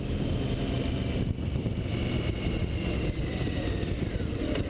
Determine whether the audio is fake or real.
real